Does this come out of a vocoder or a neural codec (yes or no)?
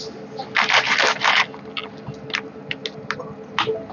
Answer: no